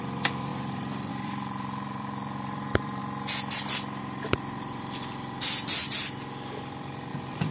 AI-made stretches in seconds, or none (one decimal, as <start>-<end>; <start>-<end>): 0.0-3.0; 4.0-5.8; 7.1-7.5